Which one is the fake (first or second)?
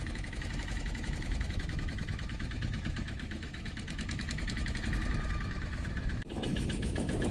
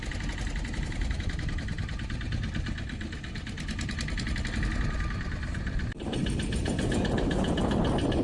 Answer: first